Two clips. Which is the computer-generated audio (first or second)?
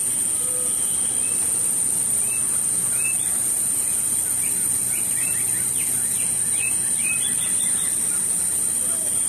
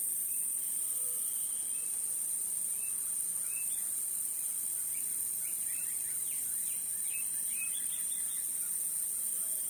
second